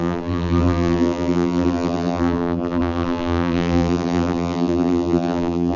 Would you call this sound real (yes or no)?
no